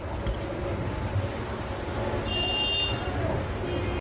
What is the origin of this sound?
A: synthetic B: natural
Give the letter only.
B